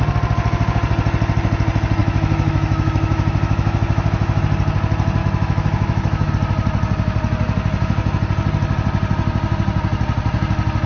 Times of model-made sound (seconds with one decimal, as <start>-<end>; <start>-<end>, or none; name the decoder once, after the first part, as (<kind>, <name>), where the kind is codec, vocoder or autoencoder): 2.0-4.4 (autoencoder, DAC-VAE); 5.2-6.3